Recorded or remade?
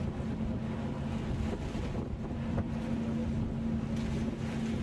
recorded